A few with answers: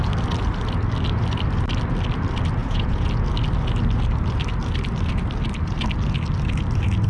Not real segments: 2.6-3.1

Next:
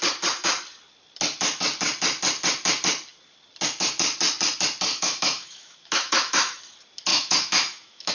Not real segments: 4.9-6.6; 7.1-8.1

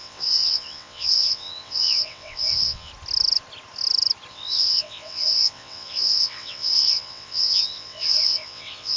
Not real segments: 0.0-2.9; 4.3-9.0

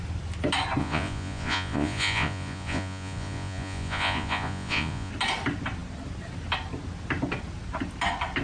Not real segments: 0.8-5.1

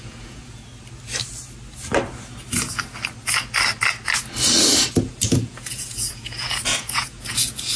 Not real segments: 0.0-0.6; 5.0-7.8

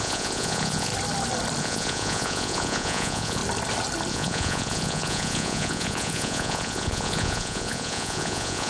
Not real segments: 0.0-0.9; 1.6-3.4; 4.1-8.7

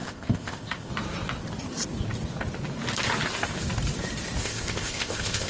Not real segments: 0.0-0.9; 4.4-5.5